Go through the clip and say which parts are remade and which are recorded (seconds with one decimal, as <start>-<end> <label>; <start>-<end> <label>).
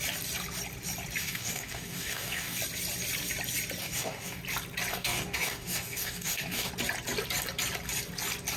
0.0-1.2 recorded; 1.2-2.6 remade; 2.6-3.8 recorded; 3.8-4.4 remade; 4.4-4.9 recorded; 4.9-6.7 remade; 6.7-8.6 recorded